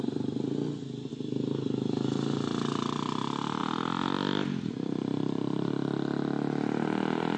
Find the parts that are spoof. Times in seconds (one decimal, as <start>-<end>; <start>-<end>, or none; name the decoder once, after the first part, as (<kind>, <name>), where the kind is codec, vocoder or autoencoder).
3.6-5.7 (vocoder, BigVGAN v2)